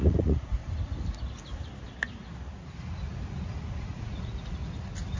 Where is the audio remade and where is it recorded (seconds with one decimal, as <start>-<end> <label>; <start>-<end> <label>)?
0.0-0.6 remade; 0.6-3.5 recorded; 3.5-4.6 remade; 4.6-5.2 recorded